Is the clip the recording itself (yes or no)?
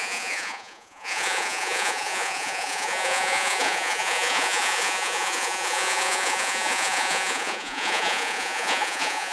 no